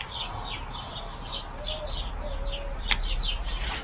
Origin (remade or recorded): recorded